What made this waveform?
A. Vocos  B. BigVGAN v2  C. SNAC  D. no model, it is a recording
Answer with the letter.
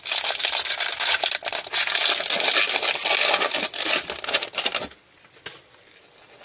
D